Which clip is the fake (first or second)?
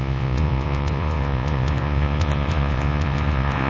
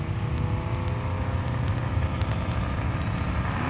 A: first